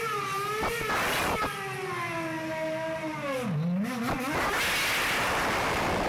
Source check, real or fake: real